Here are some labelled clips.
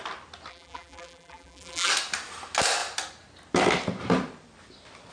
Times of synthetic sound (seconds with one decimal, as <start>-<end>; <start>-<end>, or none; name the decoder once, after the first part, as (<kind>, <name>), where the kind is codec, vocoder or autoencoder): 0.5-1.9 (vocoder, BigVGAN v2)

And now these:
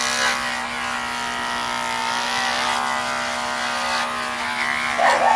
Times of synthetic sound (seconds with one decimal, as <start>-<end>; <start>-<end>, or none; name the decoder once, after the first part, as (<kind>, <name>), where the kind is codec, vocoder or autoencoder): 2.0-5.4 (vocoder, BigVGAN v2)

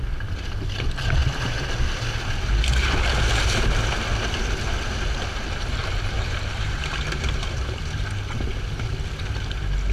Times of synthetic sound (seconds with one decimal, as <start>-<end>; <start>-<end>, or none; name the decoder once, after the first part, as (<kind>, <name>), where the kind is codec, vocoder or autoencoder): 5.8-7.8 (vocoder, BigVGAN v2)